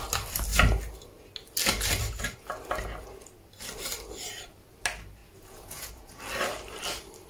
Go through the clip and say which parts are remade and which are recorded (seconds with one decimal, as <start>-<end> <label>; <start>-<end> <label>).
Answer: 0.0-5.2 recorded; 5.2-6.2 remade; 6.2-7.3 recorded